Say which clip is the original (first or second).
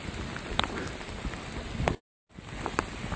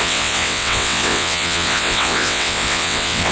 first